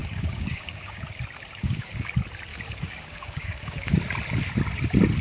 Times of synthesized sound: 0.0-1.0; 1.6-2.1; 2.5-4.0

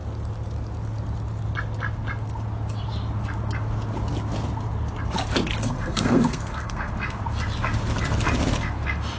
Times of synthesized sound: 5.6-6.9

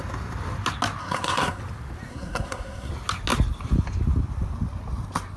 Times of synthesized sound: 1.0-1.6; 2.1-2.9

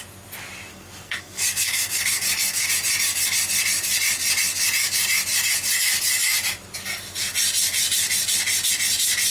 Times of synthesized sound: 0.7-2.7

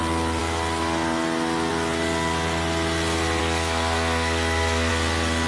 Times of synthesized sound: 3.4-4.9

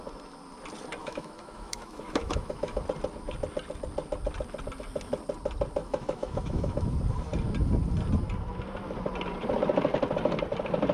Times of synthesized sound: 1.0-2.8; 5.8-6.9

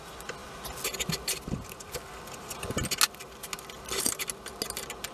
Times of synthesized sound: none

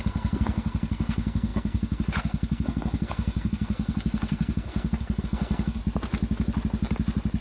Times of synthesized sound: 0.0-5.8